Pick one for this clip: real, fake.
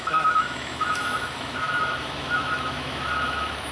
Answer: fake